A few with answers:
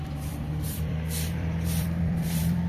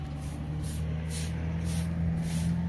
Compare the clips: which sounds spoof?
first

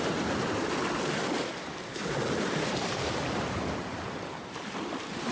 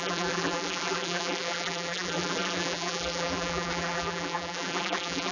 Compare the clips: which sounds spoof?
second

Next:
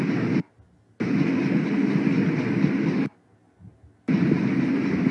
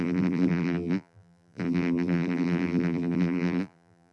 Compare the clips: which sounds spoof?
second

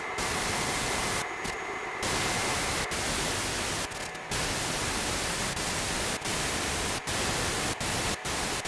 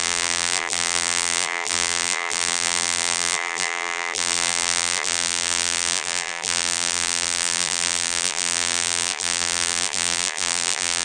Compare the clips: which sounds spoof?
second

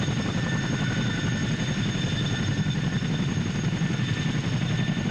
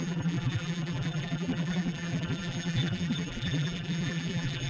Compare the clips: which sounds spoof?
second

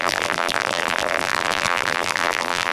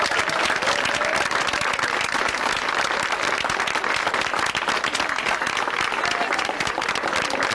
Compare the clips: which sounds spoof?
first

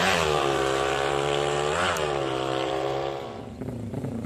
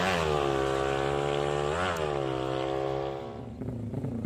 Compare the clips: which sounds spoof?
first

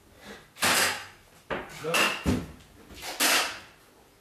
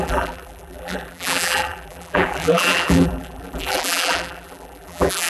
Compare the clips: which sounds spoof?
second